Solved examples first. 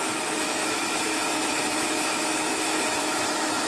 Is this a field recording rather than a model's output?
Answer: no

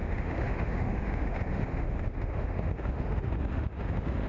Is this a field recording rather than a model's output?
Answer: no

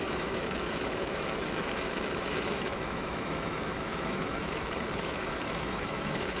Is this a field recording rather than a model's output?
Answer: no